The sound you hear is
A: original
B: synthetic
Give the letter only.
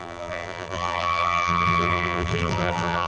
B